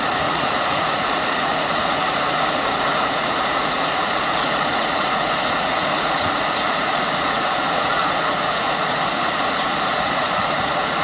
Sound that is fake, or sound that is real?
fake